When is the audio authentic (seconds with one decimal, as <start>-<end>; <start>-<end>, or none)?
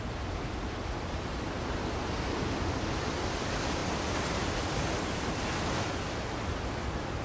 0.0-7.2